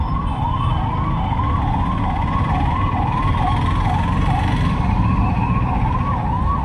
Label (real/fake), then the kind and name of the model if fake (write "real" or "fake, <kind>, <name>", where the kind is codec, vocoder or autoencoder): real